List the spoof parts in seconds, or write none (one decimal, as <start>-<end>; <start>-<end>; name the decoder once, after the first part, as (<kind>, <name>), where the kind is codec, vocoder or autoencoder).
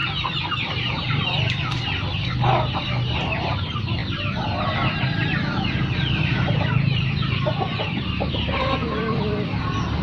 4.0-8.3 (vocoder, BigVGAN v2)